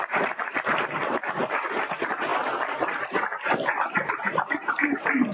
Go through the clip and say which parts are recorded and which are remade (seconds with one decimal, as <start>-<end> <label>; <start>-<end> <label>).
0.0-2.3 remade; 2.3-3.0 recorded; 3.0-5.3 remade